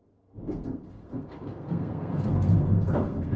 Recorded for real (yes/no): no